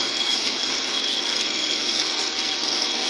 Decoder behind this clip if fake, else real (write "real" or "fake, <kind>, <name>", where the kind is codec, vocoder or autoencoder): fake, codec, SNAC